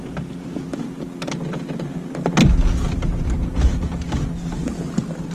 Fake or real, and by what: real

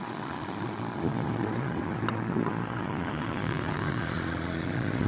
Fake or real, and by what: fake, vocoder, Vocos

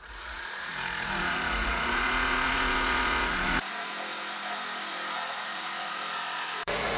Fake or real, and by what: fake, vocoder, Vocos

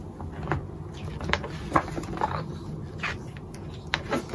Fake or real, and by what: real